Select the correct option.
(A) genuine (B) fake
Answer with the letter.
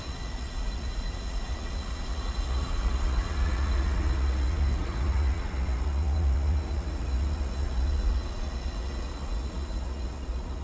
B